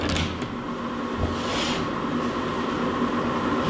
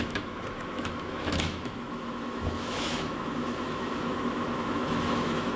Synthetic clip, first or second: second